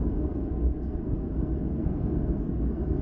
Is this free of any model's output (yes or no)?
no